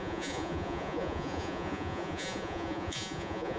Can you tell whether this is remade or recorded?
remade